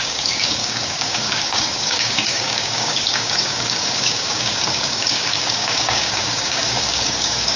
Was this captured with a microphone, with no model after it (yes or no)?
no